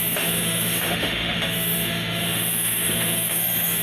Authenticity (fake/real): fake